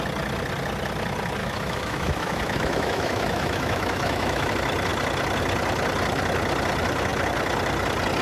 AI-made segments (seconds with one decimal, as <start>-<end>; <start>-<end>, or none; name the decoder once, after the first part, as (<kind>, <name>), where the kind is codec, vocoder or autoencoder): 1.4-4.5 (autoencoder, DAC-VAE)